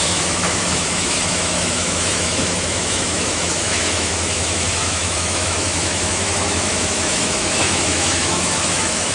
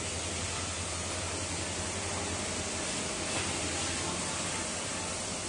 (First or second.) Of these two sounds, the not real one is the first